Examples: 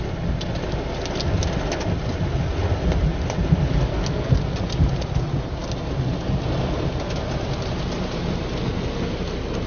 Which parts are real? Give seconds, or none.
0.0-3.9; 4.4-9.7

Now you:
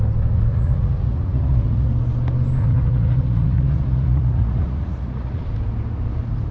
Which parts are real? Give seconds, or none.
0.0-0.5; 1.9-2.6; 5.4-6.5

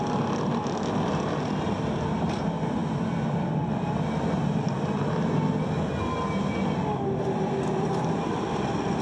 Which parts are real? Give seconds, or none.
0.0-9.0